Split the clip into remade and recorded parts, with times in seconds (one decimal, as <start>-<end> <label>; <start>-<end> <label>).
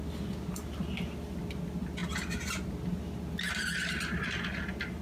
0.0-5.0 recorded